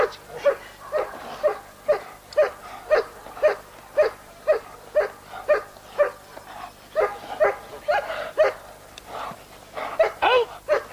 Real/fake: real